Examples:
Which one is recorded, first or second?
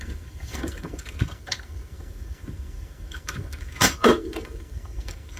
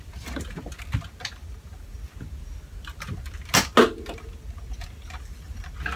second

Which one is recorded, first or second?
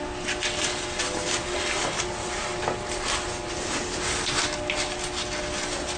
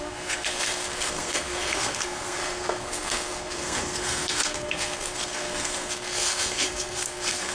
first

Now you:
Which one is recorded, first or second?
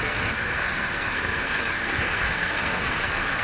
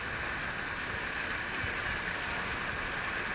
second